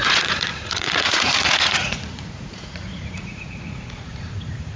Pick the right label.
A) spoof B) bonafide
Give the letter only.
A